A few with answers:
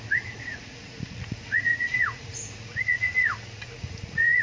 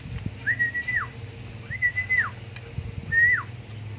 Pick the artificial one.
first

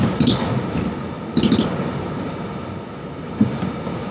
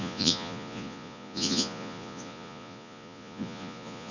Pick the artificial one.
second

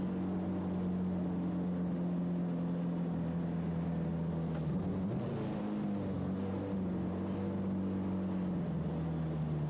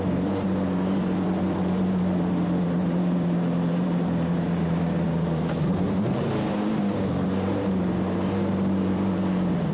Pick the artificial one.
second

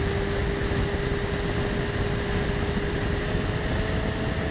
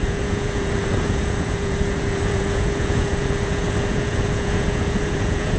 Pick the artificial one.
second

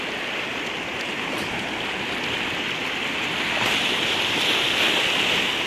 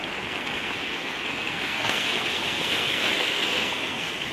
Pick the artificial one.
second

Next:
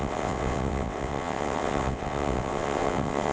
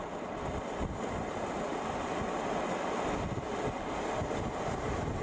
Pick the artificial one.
first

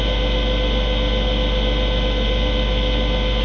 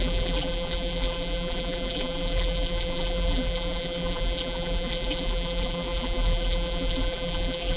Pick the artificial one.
second